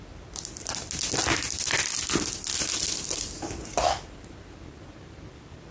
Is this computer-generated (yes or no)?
no